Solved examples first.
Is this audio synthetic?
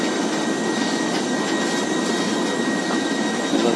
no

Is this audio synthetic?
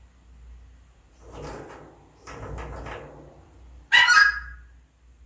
no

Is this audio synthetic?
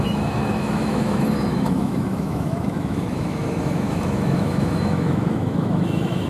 yes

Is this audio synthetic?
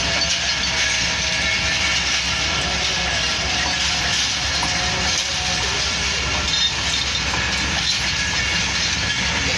no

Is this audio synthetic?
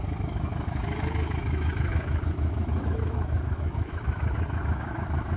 yes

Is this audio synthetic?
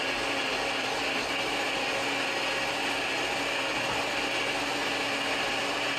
no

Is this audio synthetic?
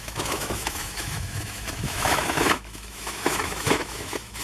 yes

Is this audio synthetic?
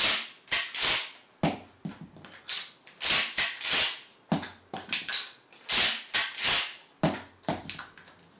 no